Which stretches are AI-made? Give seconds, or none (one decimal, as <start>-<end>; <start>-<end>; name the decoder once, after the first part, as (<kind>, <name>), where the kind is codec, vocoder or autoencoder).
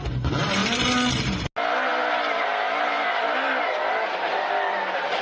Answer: none